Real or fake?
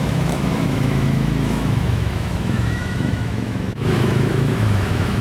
fake